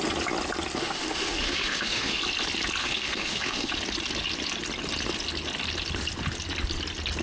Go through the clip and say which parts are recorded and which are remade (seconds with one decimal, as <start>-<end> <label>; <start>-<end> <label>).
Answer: 0.0-0.8 recorded; 0.8-2.2 remade; 2.2-2.8 recorded; 2.8-3.7 remade; 3.7-7.2 recorded